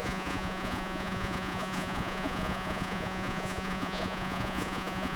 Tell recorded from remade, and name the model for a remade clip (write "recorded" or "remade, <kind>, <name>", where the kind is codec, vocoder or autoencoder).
remade, vocoder, Vocos